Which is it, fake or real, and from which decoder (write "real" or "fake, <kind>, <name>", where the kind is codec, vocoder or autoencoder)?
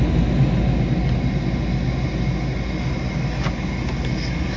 real